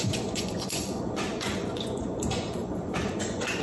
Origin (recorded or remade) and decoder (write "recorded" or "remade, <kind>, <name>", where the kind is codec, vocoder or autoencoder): remade, vocoder, Vocos